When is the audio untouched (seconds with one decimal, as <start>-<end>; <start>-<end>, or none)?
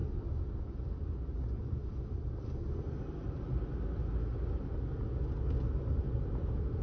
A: 0.0-6.8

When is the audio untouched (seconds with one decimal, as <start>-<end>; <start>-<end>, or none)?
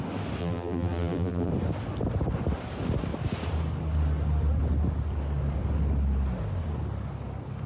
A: 0.0-0.4; 1.5-7.7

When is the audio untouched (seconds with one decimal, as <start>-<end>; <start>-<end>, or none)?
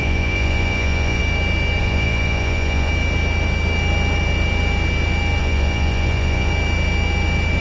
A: 1.2-1.8; 2.9-5.4; 6.5-7.6